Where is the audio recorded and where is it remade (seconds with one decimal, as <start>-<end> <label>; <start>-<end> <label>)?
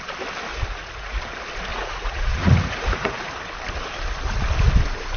0.0-0.5 recorded; 0.5-1.2 remade; 1.2-1.7 recorded; 1.7-3.3 remade; 3.3-5.2 recorded